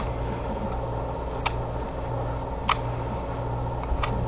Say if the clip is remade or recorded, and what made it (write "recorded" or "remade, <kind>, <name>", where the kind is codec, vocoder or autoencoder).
recorded